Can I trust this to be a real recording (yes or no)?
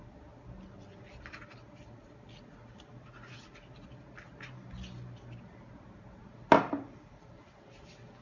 yes